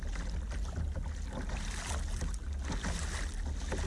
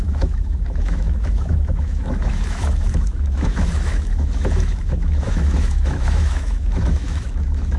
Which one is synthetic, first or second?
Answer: second